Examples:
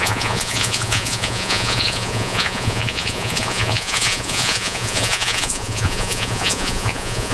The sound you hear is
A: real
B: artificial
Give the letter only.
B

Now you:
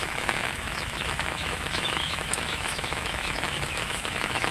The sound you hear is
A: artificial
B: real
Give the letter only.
A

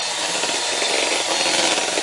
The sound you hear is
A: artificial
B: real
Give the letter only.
B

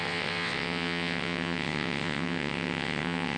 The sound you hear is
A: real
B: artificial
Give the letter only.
B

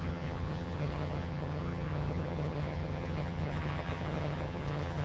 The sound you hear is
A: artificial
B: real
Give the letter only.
A